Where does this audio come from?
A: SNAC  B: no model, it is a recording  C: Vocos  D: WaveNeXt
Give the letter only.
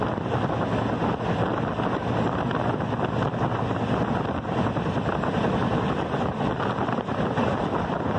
B